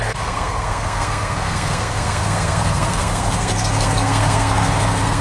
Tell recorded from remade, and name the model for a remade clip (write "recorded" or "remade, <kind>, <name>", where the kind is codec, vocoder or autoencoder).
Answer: remade, codec, SNAC